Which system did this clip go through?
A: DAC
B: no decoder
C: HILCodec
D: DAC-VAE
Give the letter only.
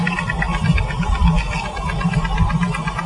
B